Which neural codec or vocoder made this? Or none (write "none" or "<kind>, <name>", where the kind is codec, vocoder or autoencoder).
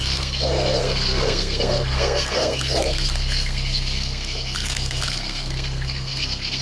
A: codec, SNAC